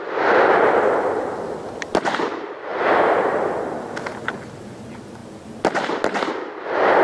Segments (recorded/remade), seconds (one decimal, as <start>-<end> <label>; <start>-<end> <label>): 0.0-7.0 recorded